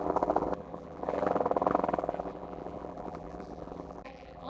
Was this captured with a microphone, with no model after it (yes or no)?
no